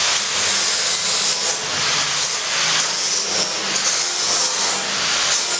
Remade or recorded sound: recorded